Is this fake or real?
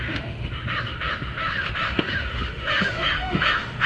fake